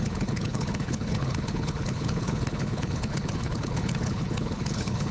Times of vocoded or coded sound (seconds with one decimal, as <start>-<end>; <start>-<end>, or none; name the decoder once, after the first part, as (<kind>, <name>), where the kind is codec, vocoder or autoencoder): 0.0-5.1 (codec, HILCodec)

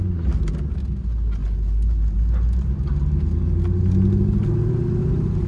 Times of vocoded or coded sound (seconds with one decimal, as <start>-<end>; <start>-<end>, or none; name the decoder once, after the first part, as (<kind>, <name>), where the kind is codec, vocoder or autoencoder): none

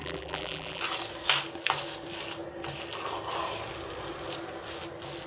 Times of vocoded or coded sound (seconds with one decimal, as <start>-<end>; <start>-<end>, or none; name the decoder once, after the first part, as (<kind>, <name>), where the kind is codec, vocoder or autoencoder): 0.0-0.8 (vocoder, BigVGAN v2)